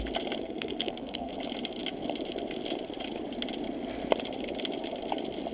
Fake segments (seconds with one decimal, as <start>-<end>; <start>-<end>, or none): 0.4-1.3